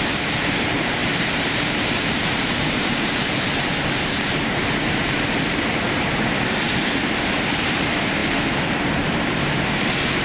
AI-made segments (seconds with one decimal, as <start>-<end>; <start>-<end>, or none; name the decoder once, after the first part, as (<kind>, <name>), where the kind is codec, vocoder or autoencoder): 0.0-10.2 (vocoder, BigVGAN v2)